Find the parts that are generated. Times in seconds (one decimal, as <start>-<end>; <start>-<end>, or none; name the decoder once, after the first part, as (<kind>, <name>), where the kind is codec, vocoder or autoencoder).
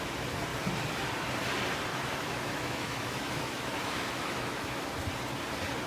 1.9-4.8 (autoencoder, DAC-VAE)